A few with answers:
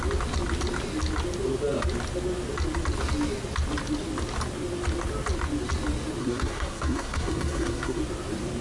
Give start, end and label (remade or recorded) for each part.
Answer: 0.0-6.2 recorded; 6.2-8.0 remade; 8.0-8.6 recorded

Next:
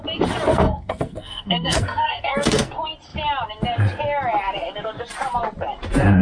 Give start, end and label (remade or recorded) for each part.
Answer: 0.0-0.5 recorded; 0.5-2.7 remade; 2.7-6.2 recorded

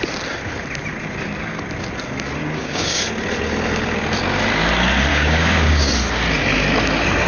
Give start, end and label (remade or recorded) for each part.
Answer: 0.0-2.4 recorded; 2.4-3.0 remade; 3.0-5.1 recorded; 5.1-5.9 remade; 5.9-7.3 recorded